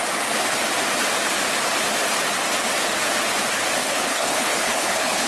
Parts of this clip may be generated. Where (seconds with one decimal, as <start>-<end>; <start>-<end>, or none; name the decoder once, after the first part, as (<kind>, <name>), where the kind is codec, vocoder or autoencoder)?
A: 3.8-5.3 (codec, HILCodec)